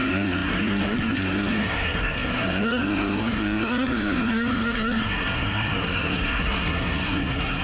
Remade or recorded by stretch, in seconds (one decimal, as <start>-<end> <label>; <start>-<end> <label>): 0.0-7.6 remade